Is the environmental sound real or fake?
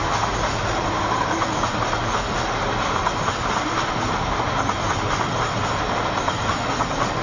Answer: real